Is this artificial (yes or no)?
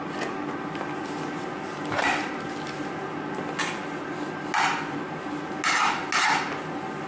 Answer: no